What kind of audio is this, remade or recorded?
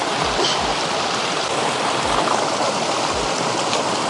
recorded